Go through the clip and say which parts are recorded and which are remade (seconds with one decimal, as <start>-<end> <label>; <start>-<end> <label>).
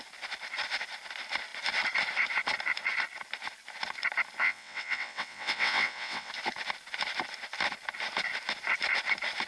0.0-4.4 recorded; 4.4-6.3 remade; 6.3-9.5 recorded